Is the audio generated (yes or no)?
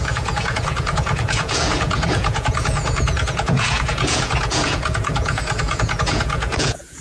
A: yes